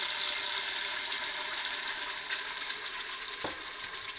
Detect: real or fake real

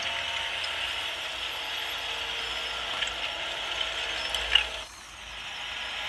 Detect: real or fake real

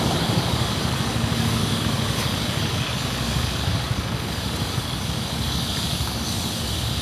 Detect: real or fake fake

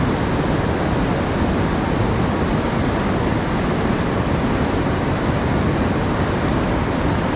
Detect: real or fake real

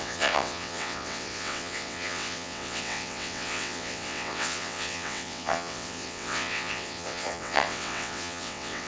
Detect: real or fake fake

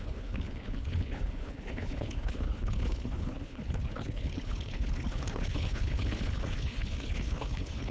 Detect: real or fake fake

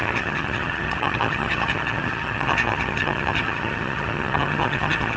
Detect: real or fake fake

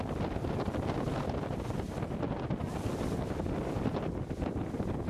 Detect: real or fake real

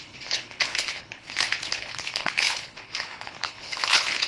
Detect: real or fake fake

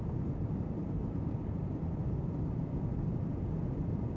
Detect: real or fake fake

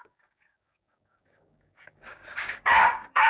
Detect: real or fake fake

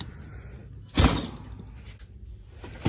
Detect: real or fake real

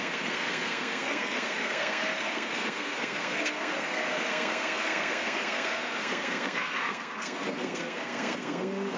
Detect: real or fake fake